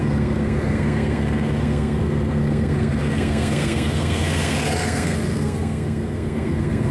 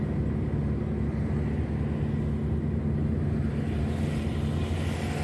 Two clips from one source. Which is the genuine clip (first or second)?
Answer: second